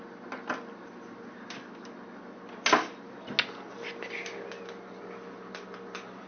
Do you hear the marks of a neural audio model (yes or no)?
no